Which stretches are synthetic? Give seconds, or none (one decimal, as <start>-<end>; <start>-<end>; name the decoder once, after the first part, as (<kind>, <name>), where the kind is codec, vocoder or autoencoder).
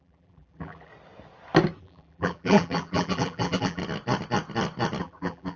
0.0-0.9 (vocoder, BigVGAN v2); 1.8-3.8; 5.0-5.6